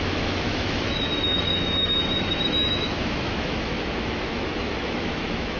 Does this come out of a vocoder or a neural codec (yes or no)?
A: yes